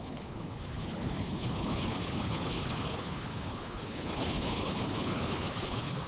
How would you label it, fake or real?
fake